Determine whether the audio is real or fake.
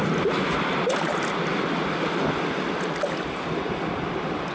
real